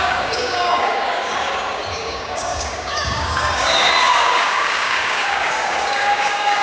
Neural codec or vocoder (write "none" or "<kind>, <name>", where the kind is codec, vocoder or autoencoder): codec, DAC